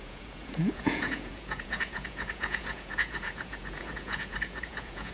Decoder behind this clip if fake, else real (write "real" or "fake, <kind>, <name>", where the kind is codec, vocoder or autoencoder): fake, vocoder, Vocos